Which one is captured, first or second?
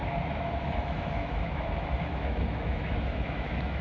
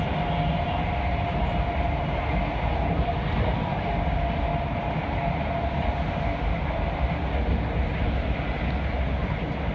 second